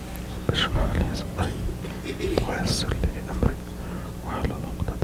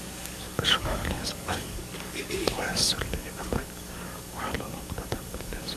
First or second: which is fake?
second